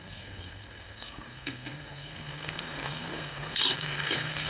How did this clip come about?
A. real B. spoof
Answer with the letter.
B